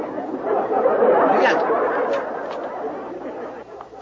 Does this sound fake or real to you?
real